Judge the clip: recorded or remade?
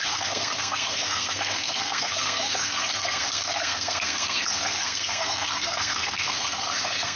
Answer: remade